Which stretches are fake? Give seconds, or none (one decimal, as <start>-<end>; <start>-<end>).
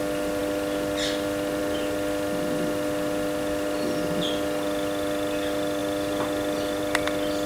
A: none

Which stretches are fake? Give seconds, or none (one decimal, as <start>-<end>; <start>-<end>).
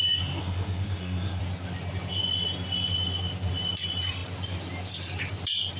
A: 0.4-1.4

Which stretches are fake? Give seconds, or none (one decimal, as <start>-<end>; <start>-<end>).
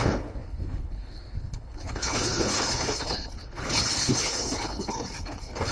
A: 0.0-5.7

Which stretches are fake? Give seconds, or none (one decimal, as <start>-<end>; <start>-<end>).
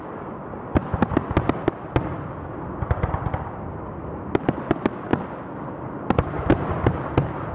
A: none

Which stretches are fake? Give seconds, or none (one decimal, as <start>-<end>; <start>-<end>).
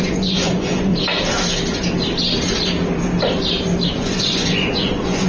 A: 0.0-0.9; 3.9-5.3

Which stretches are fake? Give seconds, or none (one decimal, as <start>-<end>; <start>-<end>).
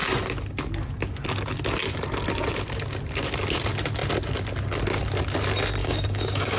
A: 5.8-6.6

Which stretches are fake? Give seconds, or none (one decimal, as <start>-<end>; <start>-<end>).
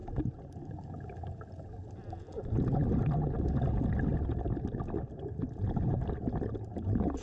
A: none